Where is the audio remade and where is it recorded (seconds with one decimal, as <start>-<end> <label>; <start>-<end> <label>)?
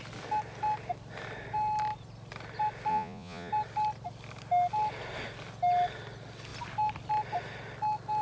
0.0-2.9 recorded; 2.9-3.5 remade; 3.5-8.2 recorded